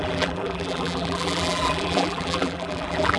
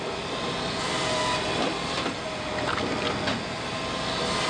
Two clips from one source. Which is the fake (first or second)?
first